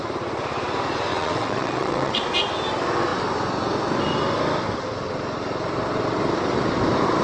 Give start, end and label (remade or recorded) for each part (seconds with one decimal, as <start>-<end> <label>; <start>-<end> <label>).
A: 0.0-1.1 recorded; 1.1-2.2 remade; 2.2-7.2 recorded